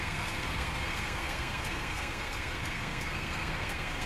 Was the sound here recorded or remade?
remade